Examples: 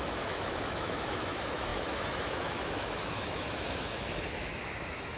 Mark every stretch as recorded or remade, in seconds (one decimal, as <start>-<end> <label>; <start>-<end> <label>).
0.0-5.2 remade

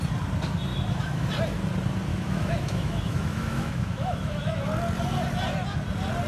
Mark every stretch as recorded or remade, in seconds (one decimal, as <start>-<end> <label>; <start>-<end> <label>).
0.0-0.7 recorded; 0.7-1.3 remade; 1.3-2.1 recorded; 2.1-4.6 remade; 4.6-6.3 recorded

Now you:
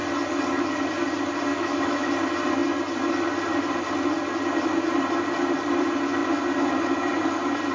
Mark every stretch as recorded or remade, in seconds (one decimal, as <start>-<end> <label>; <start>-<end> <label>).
0.0-1.5 recorded; 1.5-2.1 remade; 2.1-7.7 recorded

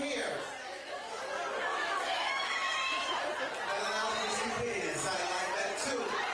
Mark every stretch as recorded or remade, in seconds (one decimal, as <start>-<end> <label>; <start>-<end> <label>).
0.0-0.6 recorded; 0.6-1.2 remade; 1.2-1.7 recorded; 1.7-3.1 remade; 3.1-6.3 recorded

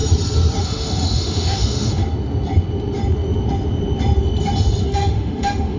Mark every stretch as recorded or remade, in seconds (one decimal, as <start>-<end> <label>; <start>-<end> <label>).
0.0-0.6 recorded; 0.6-2.0 remade; 2.0-4.8 recorded; 4.8-5.8 remade

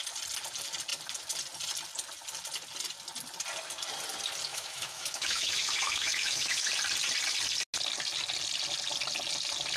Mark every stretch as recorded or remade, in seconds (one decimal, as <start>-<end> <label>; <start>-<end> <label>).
0.0-4.5 recorded; 4.5-6.7 remade; 6.7-9.8 recorded